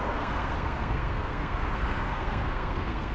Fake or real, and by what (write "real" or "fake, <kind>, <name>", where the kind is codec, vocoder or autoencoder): fake, codec, SNAC